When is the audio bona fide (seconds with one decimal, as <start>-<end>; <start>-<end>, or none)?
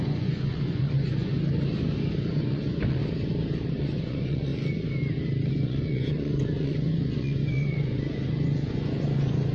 1.3-2.3; 3.0-3.8; 4.5-5.5